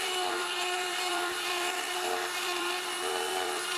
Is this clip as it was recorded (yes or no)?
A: no